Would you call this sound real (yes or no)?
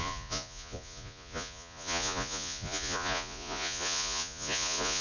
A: no